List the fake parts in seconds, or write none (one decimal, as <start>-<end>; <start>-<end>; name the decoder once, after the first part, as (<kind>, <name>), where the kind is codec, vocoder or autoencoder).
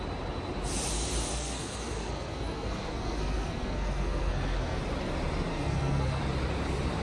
1.3-4.8 (codec, SNAC); 5.5-6.2